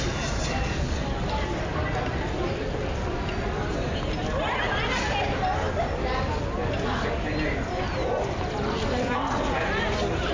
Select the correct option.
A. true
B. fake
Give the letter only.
A